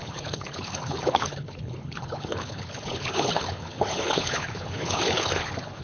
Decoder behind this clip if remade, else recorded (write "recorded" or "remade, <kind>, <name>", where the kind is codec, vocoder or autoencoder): remade, codec, HILCodec